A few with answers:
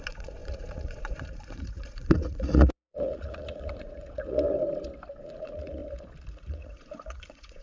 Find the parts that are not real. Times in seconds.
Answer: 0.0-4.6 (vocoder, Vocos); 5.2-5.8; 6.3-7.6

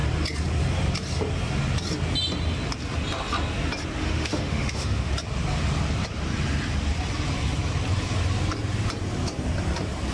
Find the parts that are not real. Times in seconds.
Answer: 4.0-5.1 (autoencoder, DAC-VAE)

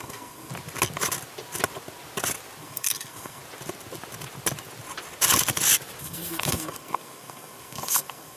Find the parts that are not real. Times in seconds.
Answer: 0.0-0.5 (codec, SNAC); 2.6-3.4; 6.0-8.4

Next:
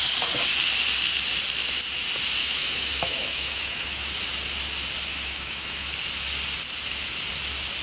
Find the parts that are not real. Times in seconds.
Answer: 2.4-4.1 (autoencoder, DAC-VAE); 5.1-5.9